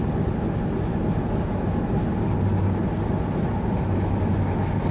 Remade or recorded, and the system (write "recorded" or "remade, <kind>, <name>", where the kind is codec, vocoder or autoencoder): recorded